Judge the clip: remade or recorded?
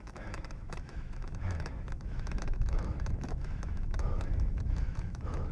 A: remade